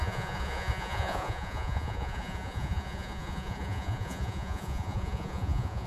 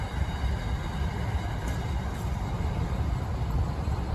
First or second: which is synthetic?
first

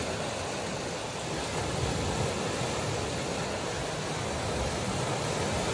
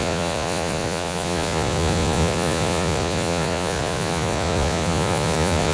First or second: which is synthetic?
second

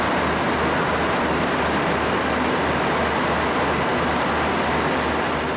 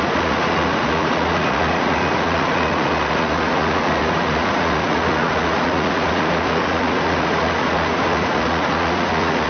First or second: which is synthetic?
second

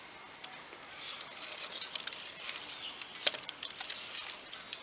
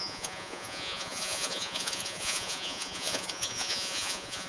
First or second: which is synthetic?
second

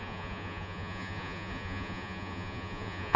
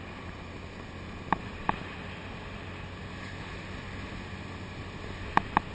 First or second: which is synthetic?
first